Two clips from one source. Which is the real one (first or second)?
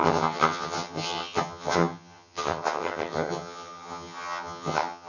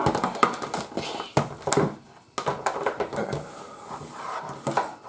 second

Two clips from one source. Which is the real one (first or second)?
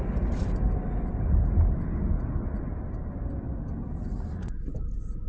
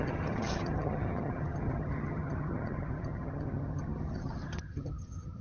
first